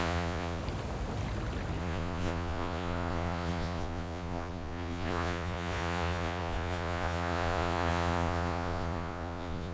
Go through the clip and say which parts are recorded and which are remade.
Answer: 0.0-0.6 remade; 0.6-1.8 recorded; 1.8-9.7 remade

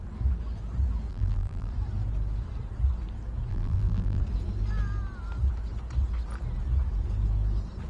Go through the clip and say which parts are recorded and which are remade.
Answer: 0.0-1.1 recorded; 1.1-1.7 remade; 1.7-3.5 recorded; 3.5-4.2 remade; 4.2-7.9 recorded

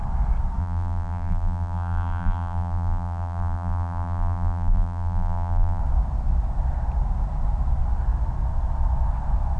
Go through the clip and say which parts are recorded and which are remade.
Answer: 0.0-0.6 recorded; 0.6-5.8 remade; 5.8-9.6 recorded

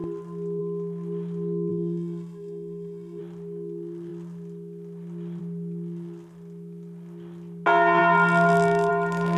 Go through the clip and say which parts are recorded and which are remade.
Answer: 0.0-1.7 recorded; 1.7-3.2 remade; 3.2-9.4 recorded